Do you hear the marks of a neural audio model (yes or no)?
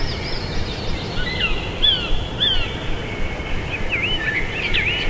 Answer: no